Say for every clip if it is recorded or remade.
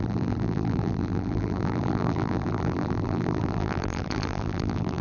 remade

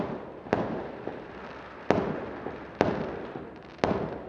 recorded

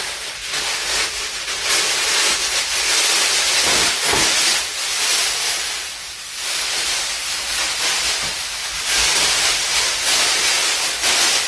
recorded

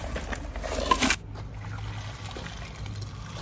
recorded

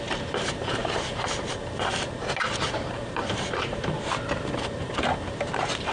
remade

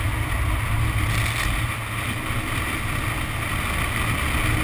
recorded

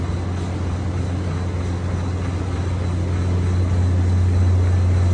recorded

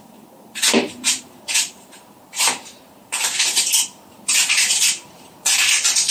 remade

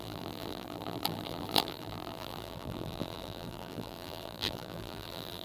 remade